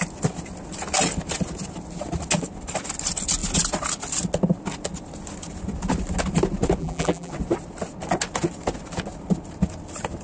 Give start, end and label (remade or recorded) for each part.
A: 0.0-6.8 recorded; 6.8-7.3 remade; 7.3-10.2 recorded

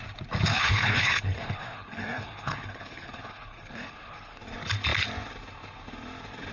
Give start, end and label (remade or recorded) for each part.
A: 0.0-0.5 recorded; 0.5-4.4 remade; 4.4-6.5 recorded

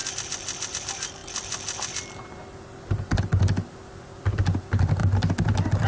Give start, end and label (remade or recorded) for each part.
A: 0.0-5.9 recorded

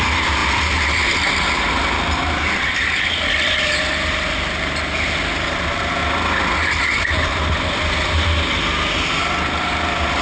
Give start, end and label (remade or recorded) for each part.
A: 0.0-10.2 recorded

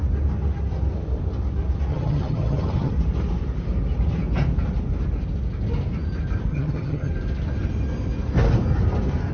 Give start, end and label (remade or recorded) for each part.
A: 0.0-1.9 recorded; 1.9-2.9 remade; 2.9-6.5 recorded; 6.5-7.1 remade; 7.1-9.3 recorded